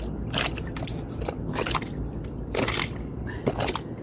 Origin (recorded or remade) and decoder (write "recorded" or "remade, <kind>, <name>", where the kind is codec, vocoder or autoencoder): recorded